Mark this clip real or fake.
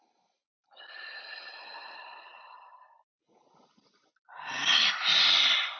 real